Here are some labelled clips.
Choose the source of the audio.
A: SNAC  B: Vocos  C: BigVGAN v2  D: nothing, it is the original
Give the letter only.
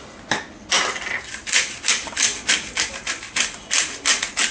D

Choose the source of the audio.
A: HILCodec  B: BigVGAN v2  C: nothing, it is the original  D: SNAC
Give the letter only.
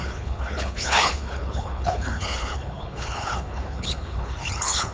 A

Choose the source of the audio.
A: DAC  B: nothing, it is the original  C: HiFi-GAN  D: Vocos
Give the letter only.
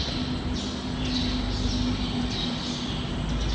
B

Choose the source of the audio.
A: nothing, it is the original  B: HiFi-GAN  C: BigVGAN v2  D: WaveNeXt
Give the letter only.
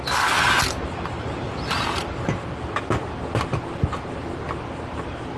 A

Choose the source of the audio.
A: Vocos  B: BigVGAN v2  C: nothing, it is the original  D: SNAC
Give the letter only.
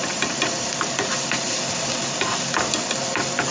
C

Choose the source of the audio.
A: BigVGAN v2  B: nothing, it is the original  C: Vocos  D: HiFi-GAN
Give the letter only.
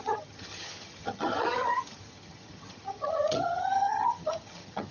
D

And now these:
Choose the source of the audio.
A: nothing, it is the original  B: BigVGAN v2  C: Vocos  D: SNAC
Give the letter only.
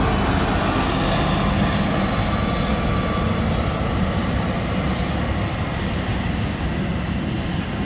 A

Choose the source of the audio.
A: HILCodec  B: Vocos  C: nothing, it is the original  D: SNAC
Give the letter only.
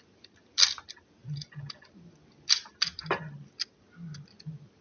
C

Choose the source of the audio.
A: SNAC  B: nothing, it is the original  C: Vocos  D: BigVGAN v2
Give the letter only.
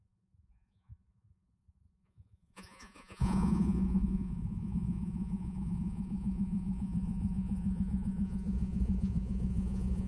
C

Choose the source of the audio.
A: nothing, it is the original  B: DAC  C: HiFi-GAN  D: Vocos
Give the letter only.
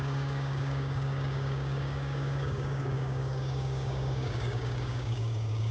B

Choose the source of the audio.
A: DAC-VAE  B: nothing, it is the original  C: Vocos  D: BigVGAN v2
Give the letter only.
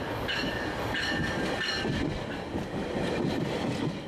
B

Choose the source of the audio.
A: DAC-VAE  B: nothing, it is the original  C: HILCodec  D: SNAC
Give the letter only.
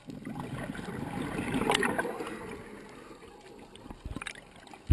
B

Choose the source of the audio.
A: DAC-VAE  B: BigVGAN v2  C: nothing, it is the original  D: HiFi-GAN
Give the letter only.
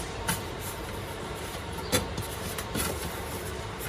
B